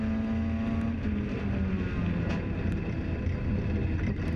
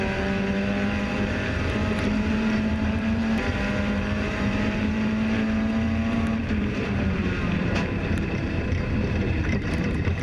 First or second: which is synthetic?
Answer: second